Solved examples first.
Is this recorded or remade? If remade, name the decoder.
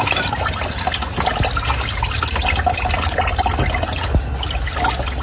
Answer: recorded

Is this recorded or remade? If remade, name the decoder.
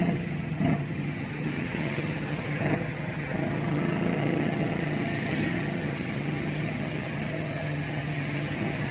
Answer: remade, vocoder, HiFi-GAN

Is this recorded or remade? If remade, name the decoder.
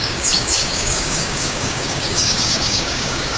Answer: remade, codec, DAC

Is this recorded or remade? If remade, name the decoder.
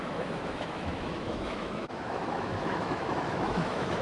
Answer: remade, autoencoder, DAC-VAE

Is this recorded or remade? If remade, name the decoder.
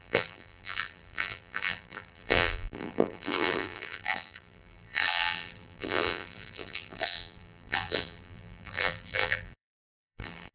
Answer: remade, vocoder, BigVGAN v2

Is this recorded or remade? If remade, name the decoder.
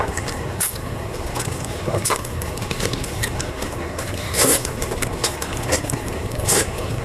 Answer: remade, codec, SNAC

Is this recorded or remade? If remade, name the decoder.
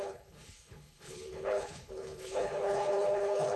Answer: remade, codec, HILCodec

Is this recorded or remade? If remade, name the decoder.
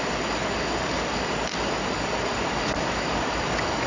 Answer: recorded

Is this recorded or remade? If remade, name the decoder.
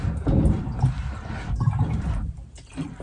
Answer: remade, vocoder, BigVGAN v2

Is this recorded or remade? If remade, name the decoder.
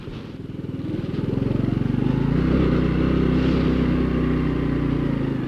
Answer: recorded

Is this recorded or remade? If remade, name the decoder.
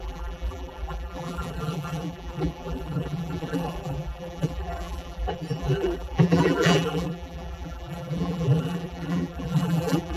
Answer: remade, vocoder, BigVGAN v2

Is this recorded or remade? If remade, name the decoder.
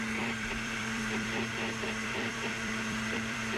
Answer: remade, vocoder, BigVGAN v2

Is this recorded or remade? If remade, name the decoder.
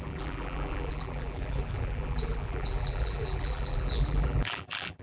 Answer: remade, vocoder, BigVGAN v2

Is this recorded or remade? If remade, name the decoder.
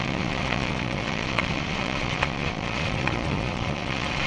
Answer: remade, vocoder, Vocos